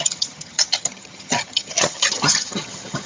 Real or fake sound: fake